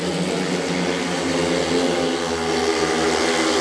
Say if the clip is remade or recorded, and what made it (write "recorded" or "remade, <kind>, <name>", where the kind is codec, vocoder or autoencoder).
recorded